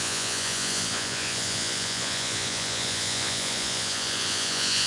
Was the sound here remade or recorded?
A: remade